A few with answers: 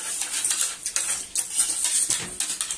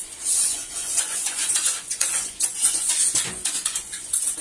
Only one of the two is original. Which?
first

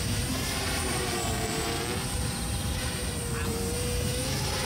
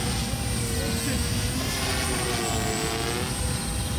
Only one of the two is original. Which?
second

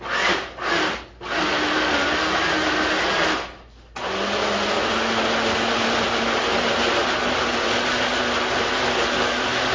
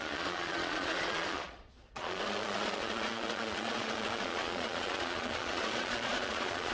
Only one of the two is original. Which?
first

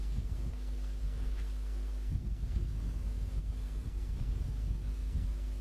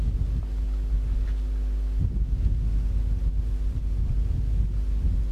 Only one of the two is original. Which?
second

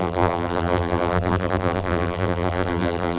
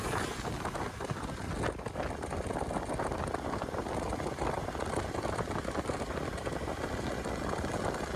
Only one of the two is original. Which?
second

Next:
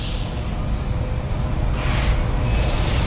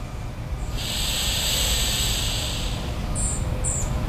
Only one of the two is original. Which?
first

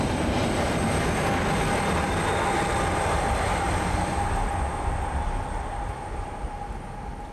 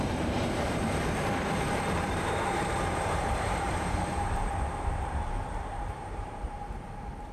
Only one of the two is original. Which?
first